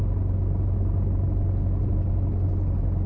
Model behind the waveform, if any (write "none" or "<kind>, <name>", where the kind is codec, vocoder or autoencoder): none